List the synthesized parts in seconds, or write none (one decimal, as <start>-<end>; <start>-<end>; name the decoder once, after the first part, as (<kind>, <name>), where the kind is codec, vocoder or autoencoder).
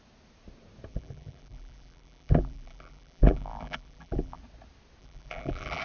0.9-4.4 (vocoder, BigVGAN v2); 5.0-5.8